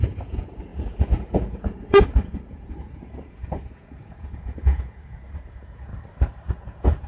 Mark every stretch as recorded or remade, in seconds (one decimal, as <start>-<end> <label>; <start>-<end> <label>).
0.0-5.9 remade; 5.9-6.5 recorded; 6.5-7.1 remade